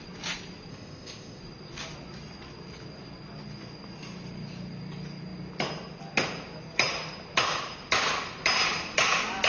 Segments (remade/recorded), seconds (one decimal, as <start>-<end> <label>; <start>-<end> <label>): 0.0-0.7 recorded; 0.7-1.4 remade; 1.4-9.5 recorded